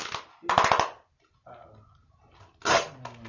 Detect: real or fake real